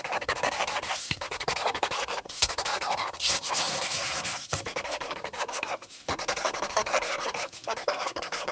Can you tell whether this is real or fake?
fake